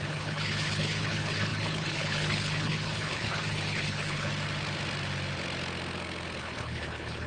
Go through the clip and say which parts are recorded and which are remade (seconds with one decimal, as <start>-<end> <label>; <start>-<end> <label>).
0.0-4.3 remade; 4.3-6.4 recorded; 6.4-7.3 remade

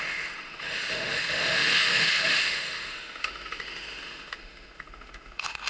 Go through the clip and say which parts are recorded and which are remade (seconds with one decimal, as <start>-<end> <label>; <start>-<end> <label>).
0.0-5.7 remade

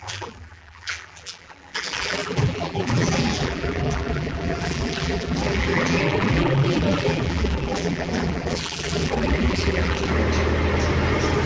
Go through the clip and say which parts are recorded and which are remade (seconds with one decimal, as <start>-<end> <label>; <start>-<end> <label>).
0.0-10.1 remade; 10.1-11.5 recorded

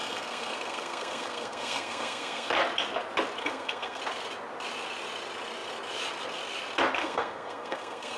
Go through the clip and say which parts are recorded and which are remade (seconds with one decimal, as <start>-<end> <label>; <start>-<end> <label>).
0.0-2.5 remade; 2.5-3.4 recorded; 3.4-4.0 remade; 4.0-7.0 recorded; 7.0-8.2 remade

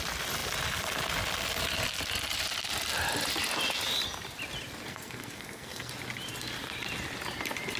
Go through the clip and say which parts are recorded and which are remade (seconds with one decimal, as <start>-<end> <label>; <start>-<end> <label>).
0.0-4.9 recorded; 4.9-5.9 remade; 5.9-7.8 recorded

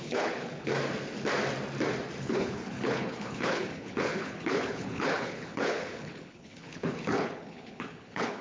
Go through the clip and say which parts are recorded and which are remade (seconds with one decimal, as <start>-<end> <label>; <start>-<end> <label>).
0.0-0.7 remade; 0.7-2.2 recorded; 2.2-8.4 remade

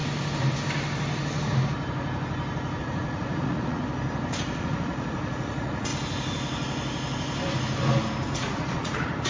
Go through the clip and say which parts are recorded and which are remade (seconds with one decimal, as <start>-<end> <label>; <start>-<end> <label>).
0.0-2.8 recorded; 2.8-3.8 remade; 3.8-4.6 recorded; 4.6-5.9 remade; 5.9-8.3 recorded; 8.3-9.3 remade